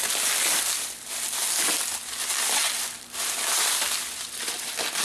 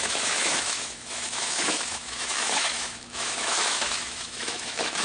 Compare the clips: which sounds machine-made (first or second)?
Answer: second